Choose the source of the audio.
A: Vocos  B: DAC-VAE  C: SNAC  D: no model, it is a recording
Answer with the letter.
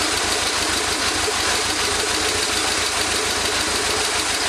D